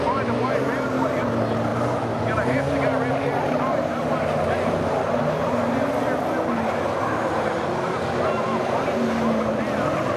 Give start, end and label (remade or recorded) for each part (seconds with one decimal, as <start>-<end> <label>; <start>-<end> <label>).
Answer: 0.0-10.2 recorded